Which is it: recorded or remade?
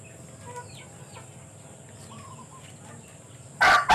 recorded